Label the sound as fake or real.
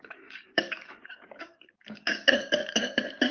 fake